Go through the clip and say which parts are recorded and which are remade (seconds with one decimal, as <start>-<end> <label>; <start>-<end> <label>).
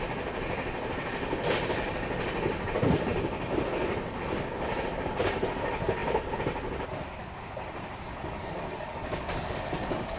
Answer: 0.0-8.1 recorded; 8.1-10.2 remade